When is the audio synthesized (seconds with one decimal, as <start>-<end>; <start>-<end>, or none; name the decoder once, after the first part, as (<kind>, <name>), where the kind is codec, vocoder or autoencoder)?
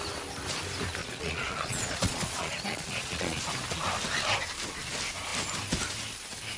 1.0-3.4 (vocoder, Vocos)